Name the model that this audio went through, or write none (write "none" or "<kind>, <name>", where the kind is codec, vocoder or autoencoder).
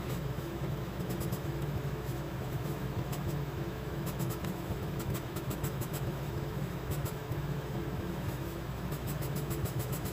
autoencoder, DAC-VAE